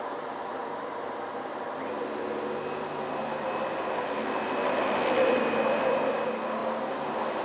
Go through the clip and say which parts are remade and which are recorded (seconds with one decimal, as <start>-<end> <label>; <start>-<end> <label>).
0.0-7.4 recorded